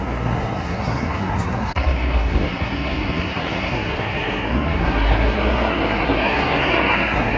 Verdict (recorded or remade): remade